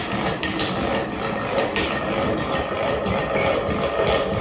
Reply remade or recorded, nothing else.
recorded